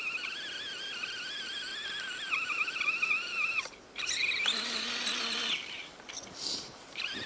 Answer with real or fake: real